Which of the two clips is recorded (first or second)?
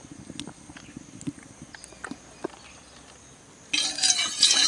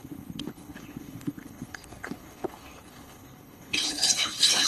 first